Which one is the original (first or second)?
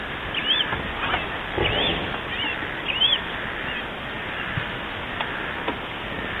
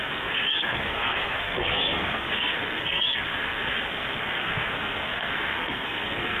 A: first